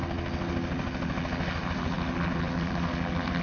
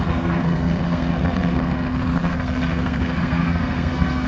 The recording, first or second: first